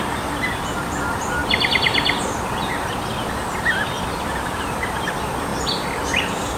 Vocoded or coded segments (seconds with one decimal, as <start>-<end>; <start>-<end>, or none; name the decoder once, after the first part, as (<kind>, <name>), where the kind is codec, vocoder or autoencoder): none